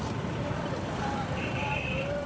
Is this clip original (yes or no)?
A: no